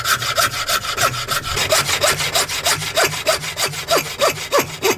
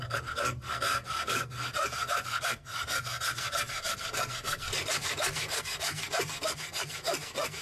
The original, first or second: first